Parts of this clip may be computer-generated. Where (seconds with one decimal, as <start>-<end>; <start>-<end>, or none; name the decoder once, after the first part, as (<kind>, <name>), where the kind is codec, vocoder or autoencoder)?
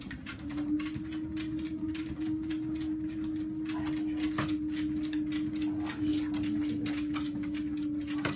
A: 1.8-2.5 (codec, DAC)